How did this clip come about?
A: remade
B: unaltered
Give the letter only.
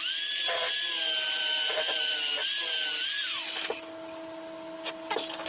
B